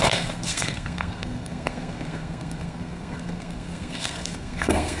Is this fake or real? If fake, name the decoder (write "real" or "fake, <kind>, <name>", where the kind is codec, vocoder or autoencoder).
fake, codec, SNAC